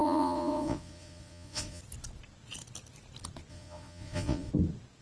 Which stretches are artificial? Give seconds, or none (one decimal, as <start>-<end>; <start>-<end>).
0.0-1.8; 3.5-4.5